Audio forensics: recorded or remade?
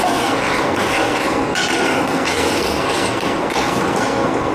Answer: remade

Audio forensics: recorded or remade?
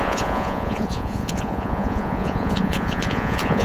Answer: remade